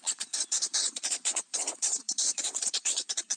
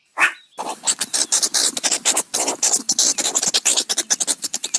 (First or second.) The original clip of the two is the second